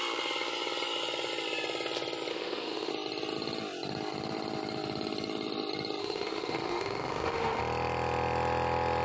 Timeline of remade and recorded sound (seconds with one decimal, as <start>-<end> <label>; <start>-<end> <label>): 0.0-2.3 recorded; 2.3-2.9 remade; 2.9-6.0 recorded; 6.0-7.6 remade; 7.6-9.0 recorded